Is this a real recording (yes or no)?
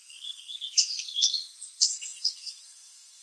no